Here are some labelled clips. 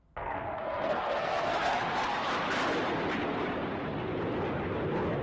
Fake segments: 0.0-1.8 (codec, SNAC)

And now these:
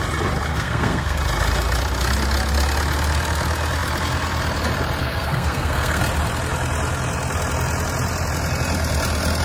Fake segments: 0.5-1.2 (codec, SNAC); 5.0-6.0

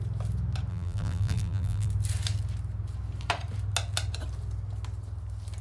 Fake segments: 0.7-1.9 (vocoder, BigVGAN v2)

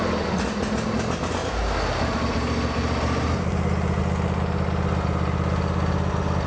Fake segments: none

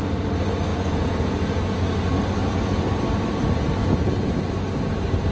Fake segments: 0.7-1.8 (vocoder, Vocos); 2.4-2.9; 3.8-4.5

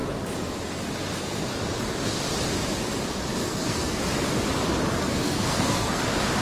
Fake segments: 3.4-4.0 (codec, SNAC); 5.0-6.0

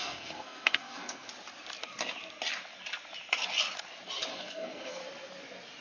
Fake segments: 0.0-1.3 (codec, SNAC); 4.3-5.0